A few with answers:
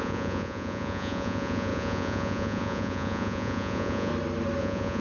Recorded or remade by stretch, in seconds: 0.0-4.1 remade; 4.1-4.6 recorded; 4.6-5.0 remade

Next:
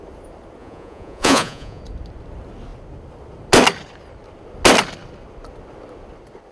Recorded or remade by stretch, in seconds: 0.0-0.6 recorded; 0.6-1.8 remade; 1.8-6.5 recorded

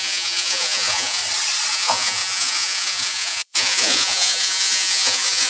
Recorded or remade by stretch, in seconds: 0.0-1.2 remade; 1.2-1.7 recorded; 1.7-5.5 remade

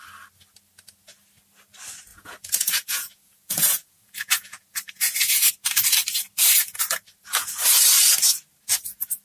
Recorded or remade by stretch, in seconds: 0.0-2.1 recorded; 2.1-5.5 remade; 5.5-9.2 recorded

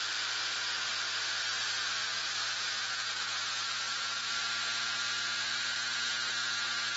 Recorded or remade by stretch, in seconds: 0.0-2.0 recorded; 2.0-4.3 remade; 4.3-7.0 recorded

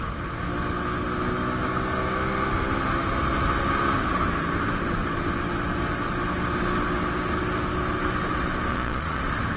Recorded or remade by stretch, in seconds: 0.0-8.7 recorded; 8.7-9.2 remade; 9.2-9.6 recorded

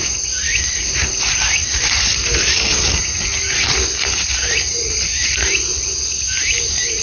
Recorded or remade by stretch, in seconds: 0.0-7.0 recorded

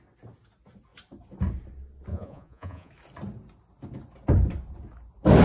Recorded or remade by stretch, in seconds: 0.0-2.1 recorded; 2.1-2.9 remade; 2.9-5.4 recorded